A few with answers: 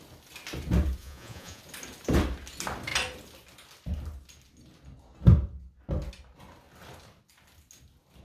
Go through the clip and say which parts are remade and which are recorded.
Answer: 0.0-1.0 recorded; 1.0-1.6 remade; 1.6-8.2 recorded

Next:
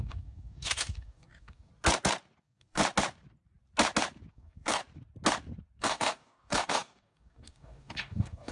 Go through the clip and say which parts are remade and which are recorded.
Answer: 0.0-1.7 remade; 1.7-2.4 recorded; 2.4-2.8 remade; 2.8-4.3 recorded; 4.3-4.8 remade; 4.8-5.8 recorded; 5.8-8.5 remade

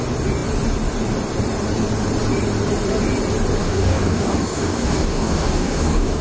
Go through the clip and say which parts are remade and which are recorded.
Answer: 0.0-3.6 recorded; 3.6-6.2 remade

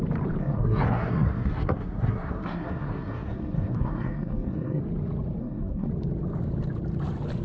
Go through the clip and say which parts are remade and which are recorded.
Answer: 0.0-0.4 recorded; 0.4-4.8 remade; 4.8-5.4 recorded; 5.4-5.9 remade; 5.9-7.4 recorded

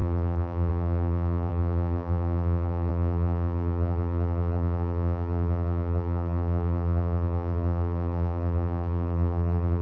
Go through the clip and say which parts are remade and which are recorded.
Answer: 0.0-9.8 remade

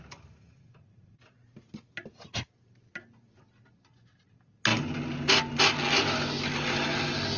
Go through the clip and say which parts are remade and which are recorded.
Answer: 0.0-7.4 recorded